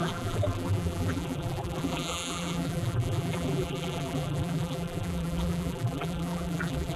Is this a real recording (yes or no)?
no